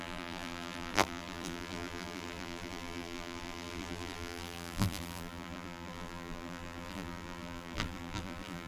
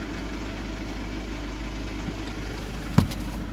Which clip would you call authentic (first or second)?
second